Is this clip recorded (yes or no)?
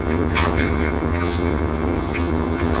no